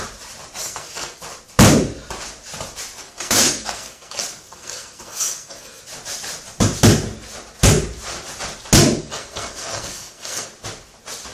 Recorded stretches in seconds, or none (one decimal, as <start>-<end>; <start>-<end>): 0.0-0.6; 1.2-3.0; 5.8-9.0; 10.5-11.3